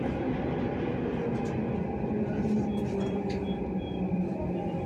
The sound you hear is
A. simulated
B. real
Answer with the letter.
B